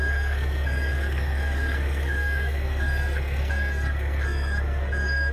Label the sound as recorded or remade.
remade